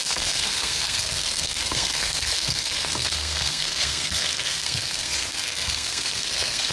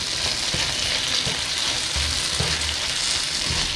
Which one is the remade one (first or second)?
first